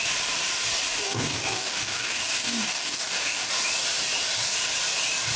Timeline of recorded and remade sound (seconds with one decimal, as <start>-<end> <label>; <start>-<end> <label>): 0.0-0.9 recorded; 0.9-3.5 remade; 3.5-5.4 recorded